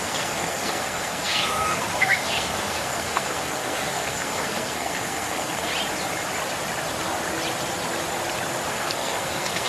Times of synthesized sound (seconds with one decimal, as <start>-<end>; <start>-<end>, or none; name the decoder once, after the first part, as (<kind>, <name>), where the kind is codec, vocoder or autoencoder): 0.0-5.7 (codec, SNAC); 8.7-9.7